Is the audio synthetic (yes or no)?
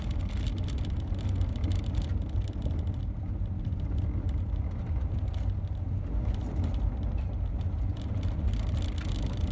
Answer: no